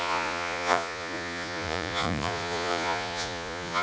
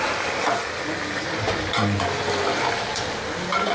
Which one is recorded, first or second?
second